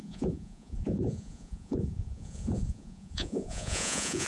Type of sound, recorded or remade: remade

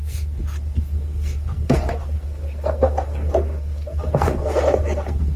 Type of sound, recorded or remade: remade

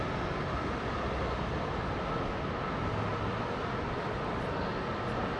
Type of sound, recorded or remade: recorded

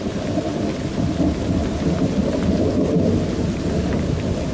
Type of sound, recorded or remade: recorded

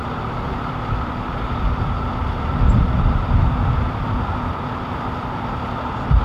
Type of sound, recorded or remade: remade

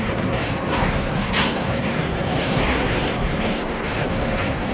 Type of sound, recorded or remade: remade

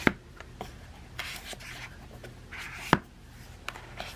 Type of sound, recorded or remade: recorded